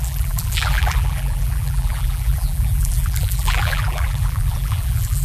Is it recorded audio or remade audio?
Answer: remade